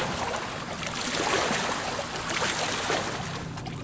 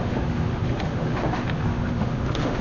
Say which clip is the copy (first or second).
second